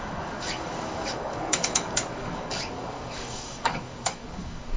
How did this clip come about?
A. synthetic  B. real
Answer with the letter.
A